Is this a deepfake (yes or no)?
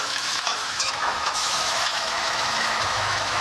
yes